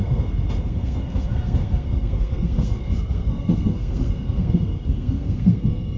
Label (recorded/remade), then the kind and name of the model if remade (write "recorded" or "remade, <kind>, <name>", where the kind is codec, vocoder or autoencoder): remade, codec, SNAC